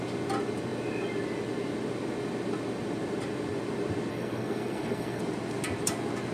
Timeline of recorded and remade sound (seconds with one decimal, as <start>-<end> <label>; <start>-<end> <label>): 0.0-4.1 recorded; 4.1-5.2 remade; 5.2-6.3 recorded